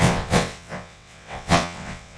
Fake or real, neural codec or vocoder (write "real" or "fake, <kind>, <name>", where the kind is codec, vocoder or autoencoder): fake, vocoder, WaveNeXt